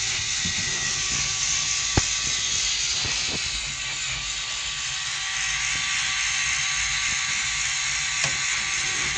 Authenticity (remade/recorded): recorded